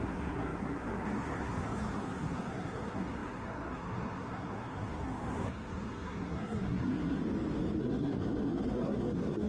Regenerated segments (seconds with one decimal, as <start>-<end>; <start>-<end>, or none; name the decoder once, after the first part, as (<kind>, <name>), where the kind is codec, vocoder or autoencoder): 0.0-7.2 (codec, SNAC); 7.8-9.5